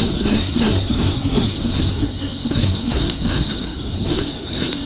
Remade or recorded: remade